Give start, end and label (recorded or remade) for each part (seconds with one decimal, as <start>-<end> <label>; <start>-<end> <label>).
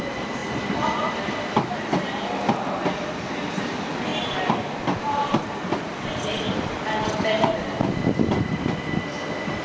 0.0-4.1 recorded; 4.1-8.6 remade; 8.6-9.6 recorded